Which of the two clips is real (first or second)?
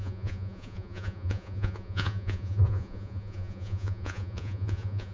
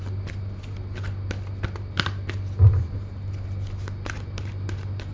second